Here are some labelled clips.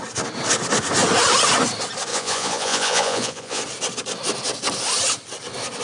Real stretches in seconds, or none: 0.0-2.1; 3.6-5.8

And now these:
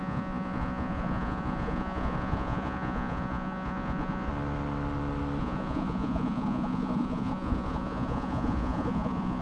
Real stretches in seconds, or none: 4.3-5.4